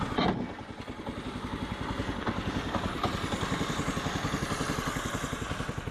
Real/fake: real